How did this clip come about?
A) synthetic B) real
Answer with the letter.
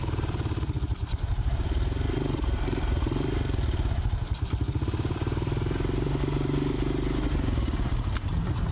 A